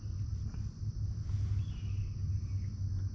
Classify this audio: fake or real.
real